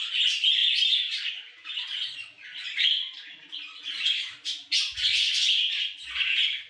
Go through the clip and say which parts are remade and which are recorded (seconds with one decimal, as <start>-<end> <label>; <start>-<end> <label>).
0.0-6.7 recorded